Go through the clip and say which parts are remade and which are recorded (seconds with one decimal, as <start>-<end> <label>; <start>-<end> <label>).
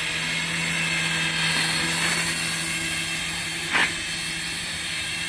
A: 0.0-3.2 recorded; 3.2-3.8 remade; 3.8-4.6 recorded; 4.6-5.3 remade